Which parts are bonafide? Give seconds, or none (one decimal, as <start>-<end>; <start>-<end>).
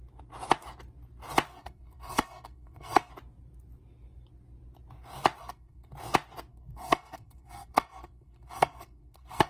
0.0-1.5; 3.1-5.4; 5.9-6.5